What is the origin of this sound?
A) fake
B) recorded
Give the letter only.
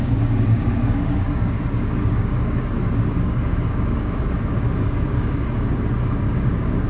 A